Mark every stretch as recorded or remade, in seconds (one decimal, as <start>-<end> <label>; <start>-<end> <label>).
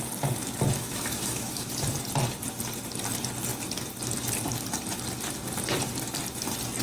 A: 0.0-0.8 recorded; 0.8-1.7 remade; 1.7-6.8 recorded